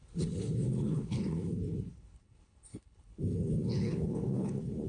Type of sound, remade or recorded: remade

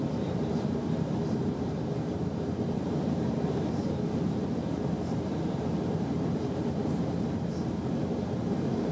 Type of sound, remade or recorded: remade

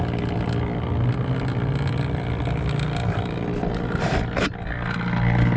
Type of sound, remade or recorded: recorded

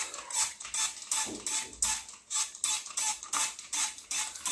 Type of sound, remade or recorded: recorded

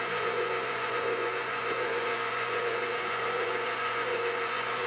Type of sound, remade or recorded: remade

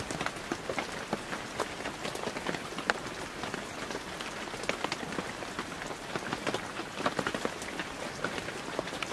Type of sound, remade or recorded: recorded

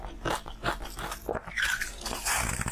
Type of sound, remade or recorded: recorded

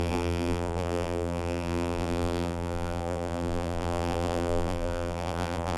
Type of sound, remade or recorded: remade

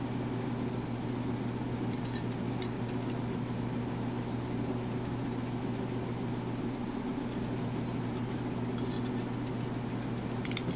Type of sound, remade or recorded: recorded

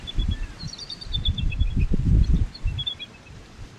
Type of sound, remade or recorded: remade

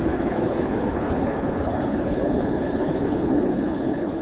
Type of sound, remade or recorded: remade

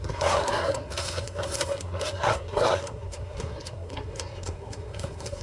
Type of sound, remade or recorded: remade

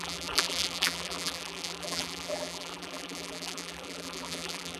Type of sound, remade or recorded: remade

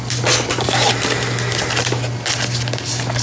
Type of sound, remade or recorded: recorded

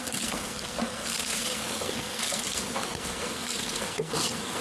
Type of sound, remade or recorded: remade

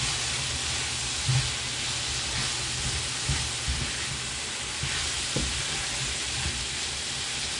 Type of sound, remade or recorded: recorded